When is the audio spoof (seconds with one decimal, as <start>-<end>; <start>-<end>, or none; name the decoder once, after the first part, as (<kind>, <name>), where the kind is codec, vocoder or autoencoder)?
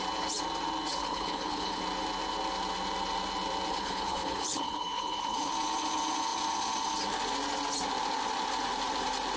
1.0-1.8 (codec, HILCodec); 3.7-5.5